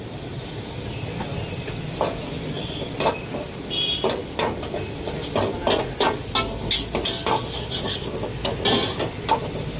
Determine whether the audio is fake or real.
real